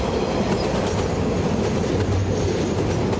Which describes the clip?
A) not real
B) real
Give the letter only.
B